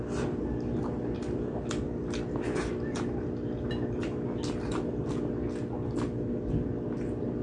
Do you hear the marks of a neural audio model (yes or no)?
no